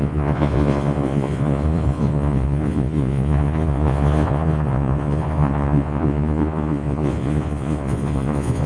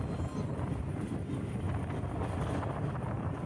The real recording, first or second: second